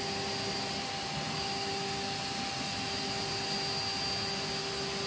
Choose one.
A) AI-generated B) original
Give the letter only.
B